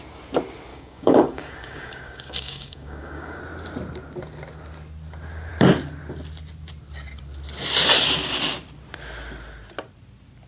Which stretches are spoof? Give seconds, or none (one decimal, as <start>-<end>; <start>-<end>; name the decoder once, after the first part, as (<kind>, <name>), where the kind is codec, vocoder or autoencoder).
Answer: 0.7-3.4 (codec, DAC)